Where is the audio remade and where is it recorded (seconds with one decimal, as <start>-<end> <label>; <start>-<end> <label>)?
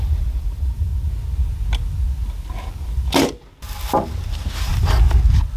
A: 0.0-0.9 remade; 0.9-4.3 recorded; 4.3-4.7 remade; 4.7-5.6 recorded